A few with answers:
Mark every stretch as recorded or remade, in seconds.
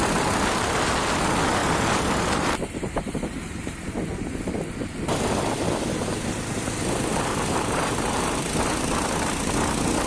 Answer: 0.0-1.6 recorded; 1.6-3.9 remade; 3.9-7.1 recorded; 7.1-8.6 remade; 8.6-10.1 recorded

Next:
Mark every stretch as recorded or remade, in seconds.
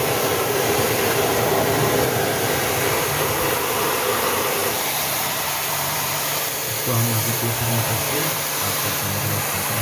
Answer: 0.0-1.5 remade; 1.5-2.6 recorded; 2.6-6.6 remade; 6.6-7.3 recorded; 7.3-9.8 remade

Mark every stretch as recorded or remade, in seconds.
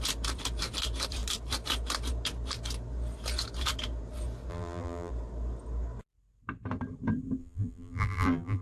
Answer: 0.0-4.5 recorded; 4.5-5.1 remade; 5.1-7.4 recorded; 7.4-8.6 remade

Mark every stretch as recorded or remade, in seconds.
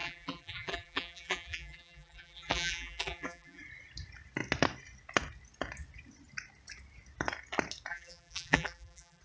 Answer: 0.0-3.6 remade; 3.6-7.9 recorded; 7.9-9.2 remade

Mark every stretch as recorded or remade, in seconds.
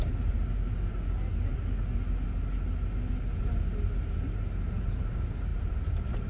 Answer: 0.0-5.5 recorded; 5.5-6.3 remade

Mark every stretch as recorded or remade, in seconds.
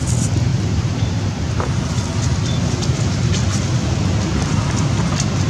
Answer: 0.0-0.5 recorded; 0.5-1.9 remade; 1.9-5.5 recorded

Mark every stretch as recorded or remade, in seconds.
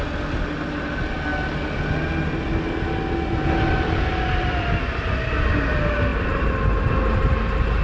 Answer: 0.0-4.1 recorded; 4.1-4.7 remade; 4.7-6.1 recorded; 6.1-6.8 remade; 6.8-7.8 recorded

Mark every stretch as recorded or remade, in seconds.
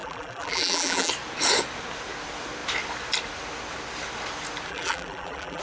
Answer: 0.0-1.1 remade; 1.1-4.7 recorded; 4.7-5.6 remade